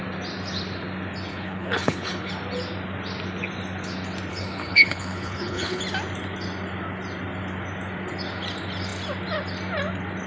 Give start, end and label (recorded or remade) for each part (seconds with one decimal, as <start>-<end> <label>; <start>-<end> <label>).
0.0-1.3 recorded; 1.3-2.3 remade; 2.3-4.3 recorded; 4.3-5.8 remade; 5.8-10.3 recorded